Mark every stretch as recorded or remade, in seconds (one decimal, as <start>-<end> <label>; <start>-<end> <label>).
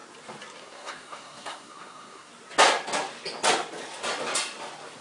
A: 0.0-0.6 recorded; 0.6-2.3 remade; 2.3-5.0 recorded